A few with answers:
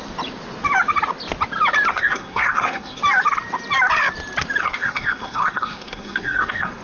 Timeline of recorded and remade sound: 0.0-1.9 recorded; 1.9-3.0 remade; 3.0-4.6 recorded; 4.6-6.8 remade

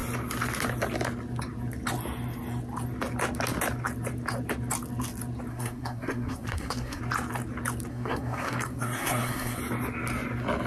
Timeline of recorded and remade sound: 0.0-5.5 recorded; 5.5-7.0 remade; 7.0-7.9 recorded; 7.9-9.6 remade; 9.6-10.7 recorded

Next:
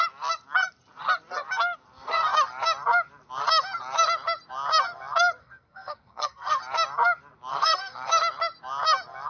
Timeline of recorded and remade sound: 0.0-5.4 recorded; 5.4-6.6 remade; 6.6-7.5 recorded; 7.5-8.1 remade; 8.1-9.3 recorded